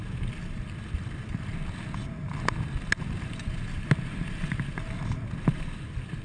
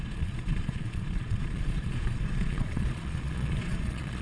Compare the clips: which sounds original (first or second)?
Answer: first